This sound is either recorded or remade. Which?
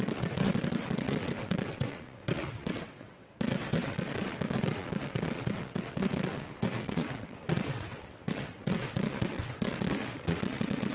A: remade